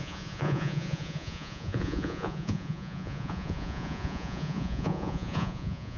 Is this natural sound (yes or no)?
no